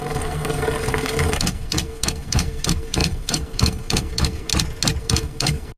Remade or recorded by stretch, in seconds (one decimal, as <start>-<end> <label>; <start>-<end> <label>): 0.0-4.5 remade; 4.5-5.0 recorded; 5.0-5.8 remade